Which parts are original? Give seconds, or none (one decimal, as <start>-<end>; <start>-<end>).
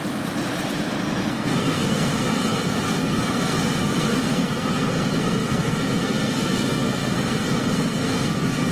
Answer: 0.0-1.3